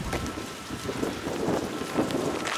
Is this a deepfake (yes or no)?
no